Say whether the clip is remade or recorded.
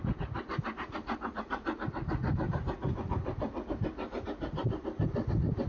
recorded